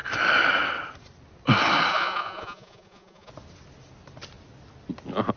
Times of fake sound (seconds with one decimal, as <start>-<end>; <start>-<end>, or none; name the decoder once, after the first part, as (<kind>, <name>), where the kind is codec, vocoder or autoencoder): 1.9-3.3 (vocoder, Vocos)